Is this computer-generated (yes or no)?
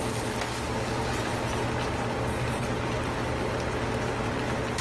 no